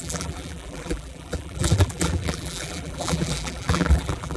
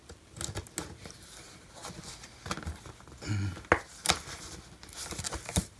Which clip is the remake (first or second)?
first